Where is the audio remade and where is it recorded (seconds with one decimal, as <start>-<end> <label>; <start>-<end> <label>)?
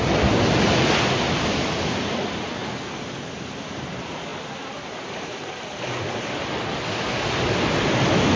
0.0-8.4 recorded